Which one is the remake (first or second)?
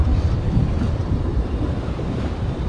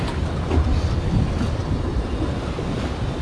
first